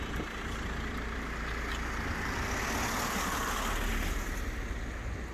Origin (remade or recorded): recorded